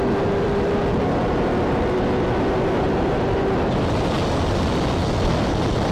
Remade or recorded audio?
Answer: recorded